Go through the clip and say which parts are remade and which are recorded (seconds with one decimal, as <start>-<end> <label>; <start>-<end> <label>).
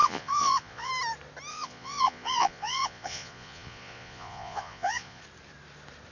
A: 0.0-0.9 remade; 0.9-1.5 recorded; 1.5-5.2 remade; 5.2-6.1 recorded